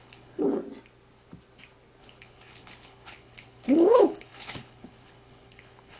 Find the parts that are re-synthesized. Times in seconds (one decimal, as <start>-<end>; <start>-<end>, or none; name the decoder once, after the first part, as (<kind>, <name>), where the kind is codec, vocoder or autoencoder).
0.0-0.6 (codec, HILCodec); 2.0-6.0